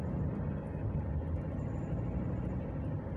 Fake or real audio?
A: real